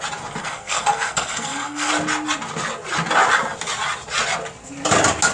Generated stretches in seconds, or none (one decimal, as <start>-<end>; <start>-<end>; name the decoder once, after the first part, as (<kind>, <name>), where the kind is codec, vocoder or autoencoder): 0.4-1.9 (codec, SNAC)